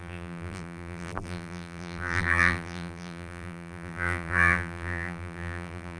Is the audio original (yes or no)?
no